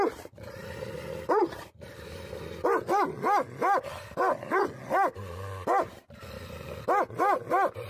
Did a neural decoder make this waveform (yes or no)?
no